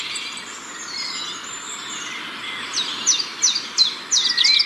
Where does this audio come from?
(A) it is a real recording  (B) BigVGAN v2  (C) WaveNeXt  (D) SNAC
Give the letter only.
A